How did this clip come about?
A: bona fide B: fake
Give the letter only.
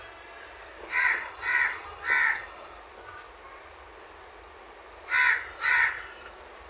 A